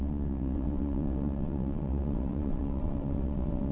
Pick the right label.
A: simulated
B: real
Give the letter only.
A